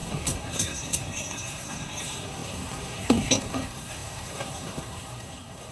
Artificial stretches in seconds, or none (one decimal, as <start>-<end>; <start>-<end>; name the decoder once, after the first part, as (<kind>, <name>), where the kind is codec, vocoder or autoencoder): 0.0-5.7 (codec, SNAC)